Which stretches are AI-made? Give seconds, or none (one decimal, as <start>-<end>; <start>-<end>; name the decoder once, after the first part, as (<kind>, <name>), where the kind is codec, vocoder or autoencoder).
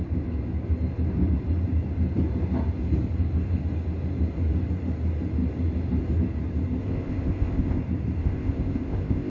6.8-7.8 (codec, ZipCodec); 8.2-9.3